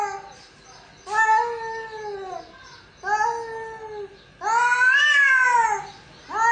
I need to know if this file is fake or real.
real